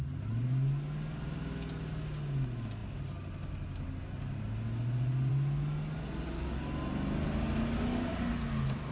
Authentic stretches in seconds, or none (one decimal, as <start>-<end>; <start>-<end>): 0.0-8.9